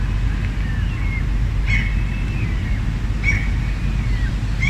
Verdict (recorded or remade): recorded